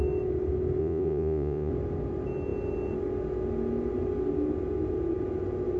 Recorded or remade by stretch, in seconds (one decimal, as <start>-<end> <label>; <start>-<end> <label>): 0.0-0.8 recorded; 0.8-1.7 remade; 1.7-5.8 recorded